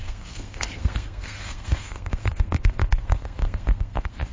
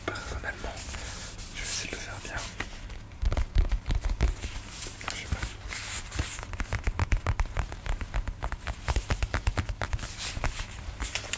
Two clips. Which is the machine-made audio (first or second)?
first